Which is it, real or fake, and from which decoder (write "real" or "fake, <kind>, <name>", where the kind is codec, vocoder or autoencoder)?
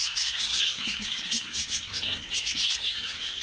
fake, codec, SNAC